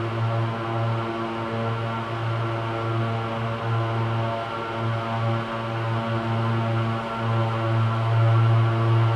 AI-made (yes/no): no